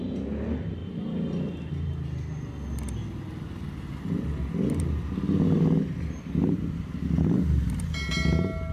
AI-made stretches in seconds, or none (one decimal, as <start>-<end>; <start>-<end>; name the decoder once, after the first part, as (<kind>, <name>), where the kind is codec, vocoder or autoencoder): none